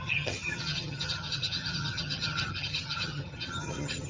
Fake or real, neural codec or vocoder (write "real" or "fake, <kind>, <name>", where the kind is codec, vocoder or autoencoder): fake, vocoder, HiFi-GAN